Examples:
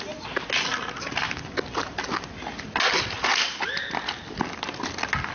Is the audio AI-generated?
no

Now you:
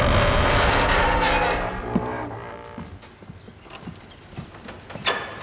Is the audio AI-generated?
no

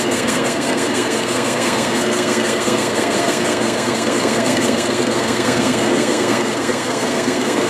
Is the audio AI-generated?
yes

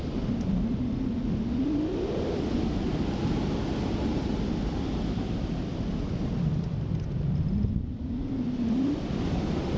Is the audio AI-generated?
no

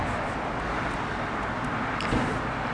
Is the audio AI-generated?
no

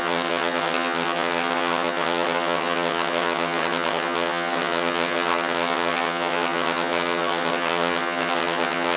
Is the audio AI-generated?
yes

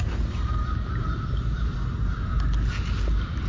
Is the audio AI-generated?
no